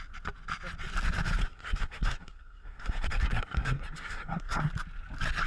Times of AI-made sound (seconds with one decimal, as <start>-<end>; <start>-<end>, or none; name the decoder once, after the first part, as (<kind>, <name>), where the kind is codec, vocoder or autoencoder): 1.4-4.7 (codec, SNAC)